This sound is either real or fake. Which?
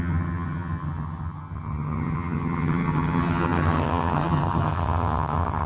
fake